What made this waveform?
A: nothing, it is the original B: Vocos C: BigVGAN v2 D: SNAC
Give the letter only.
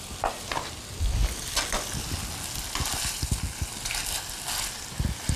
A